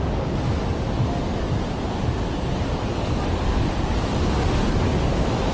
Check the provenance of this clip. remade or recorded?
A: recorded